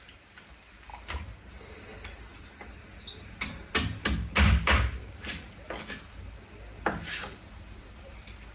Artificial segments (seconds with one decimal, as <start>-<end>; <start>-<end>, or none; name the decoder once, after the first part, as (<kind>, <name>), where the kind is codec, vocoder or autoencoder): none